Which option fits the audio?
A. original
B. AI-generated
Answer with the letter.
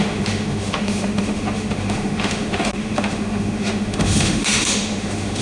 B